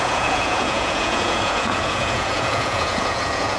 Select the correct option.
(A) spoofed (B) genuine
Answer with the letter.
A